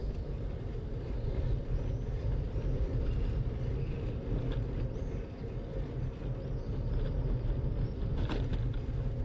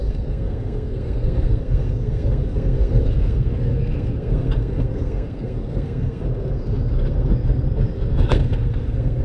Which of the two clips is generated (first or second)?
second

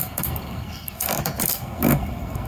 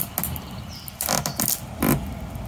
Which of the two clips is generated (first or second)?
first